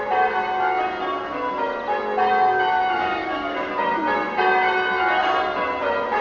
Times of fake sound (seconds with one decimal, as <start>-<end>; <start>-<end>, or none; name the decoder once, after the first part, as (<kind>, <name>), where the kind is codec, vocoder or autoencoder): 3.0-3.7 (codec, DAC)